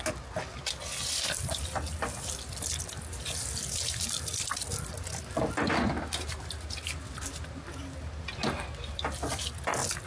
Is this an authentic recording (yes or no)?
yes